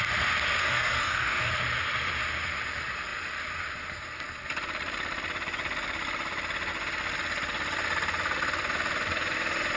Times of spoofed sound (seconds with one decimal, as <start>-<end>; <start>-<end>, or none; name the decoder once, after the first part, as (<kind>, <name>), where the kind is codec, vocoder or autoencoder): 0.6-1.5 (codec, DAC)